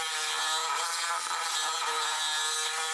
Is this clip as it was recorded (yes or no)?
yes